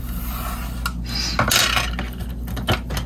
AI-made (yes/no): no